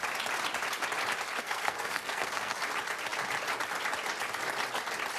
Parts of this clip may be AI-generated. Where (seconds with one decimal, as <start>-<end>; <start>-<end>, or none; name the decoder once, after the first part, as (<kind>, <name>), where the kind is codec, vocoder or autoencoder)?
1.4-2.6 (codec, SNAC)